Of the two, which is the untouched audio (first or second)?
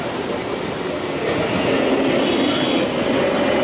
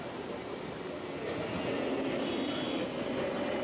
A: second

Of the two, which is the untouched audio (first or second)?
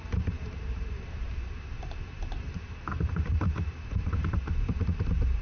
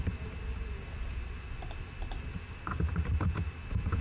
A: second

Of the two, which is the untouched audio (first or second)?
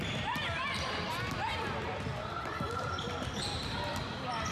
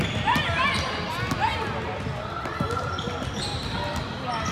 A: second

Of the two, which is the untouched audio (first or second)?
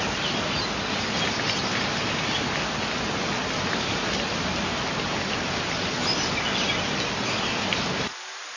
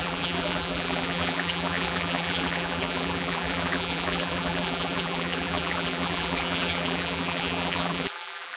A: first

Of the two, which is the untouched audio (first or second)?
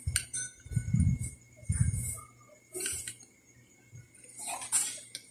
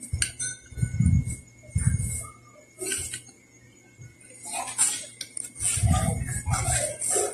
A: second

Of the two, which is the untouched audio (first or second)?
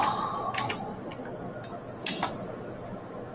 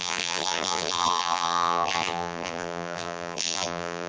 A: first